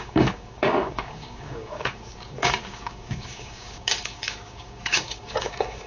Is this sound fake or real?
fake